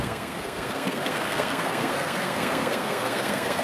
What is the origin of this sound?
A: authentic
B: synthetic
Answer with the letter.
B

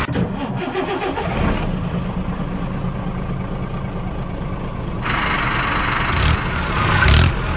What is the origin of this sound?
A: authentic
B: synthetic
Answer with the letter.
A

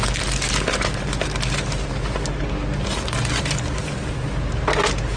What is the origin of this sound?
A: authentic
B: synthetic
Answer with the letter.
A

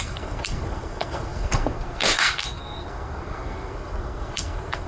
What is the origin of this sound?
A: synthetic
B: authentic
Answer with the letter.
A